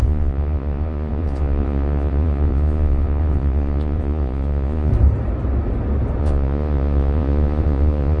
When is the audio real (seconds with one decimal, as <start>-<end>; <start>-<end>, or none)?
4.9-6.2